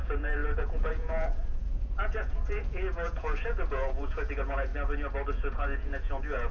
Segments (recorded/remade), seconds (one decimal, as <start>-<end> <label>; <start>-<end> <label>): 0.0-4.7 remade; 4.7-5.3 recorded; 5.3-6.5 remade